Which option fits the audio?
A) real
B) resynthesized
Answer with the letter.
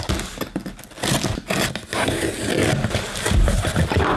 A